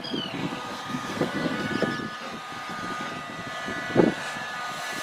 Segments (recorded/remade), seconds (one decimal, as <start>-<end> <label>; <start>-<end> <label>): 0.0-0.4 recorded; 0.4-1.7 remade; 1.7-5.0 recorded